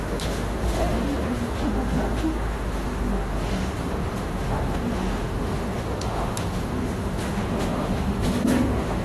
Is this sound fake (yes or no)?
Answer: yes